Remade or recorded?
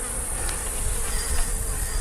recorded